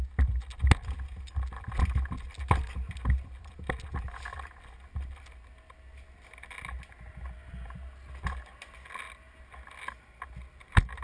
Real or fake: real